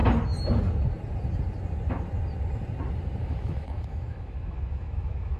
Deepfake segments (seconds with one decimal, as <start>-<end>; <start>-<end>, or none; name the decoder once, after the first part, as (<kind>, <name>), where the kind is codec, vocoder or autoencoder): 3.2-5.4 (autoencoder, DAC-VAE)